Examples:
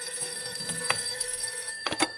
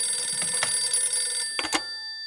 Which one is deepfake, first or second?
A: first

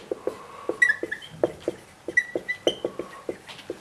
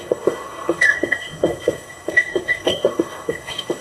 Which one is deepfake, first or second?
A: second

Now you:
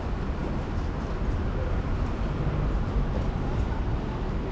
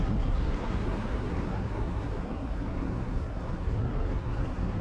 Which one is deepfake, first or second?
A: second